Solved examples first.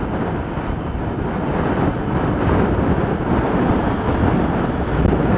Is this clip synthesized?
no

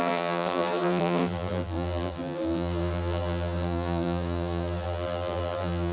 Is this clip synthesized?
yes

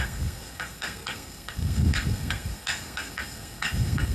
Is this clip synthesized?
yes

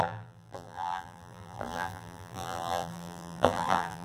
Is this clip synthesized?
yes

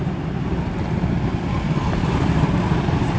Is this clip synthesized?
no